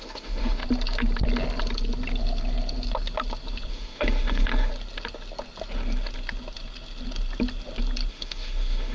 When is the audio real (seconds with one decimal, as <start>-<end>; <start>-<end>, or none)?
0.6-3.7; 4.7-8.1